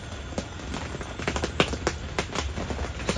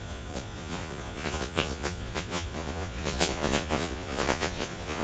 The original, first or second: first